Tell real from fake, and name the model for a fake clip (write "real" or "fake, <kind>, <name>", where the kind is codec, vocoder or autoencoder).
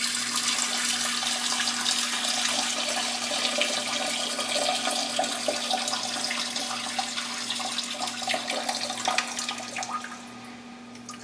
real